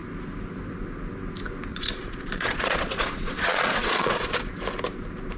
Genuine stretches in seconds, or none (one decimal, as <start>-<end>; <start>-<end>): 0.0-1.7; 4.5-5.4